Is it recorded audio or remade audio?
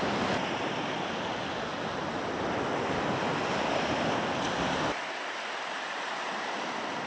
recorded